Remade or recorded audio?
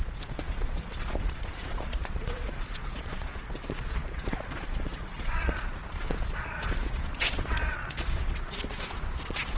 remade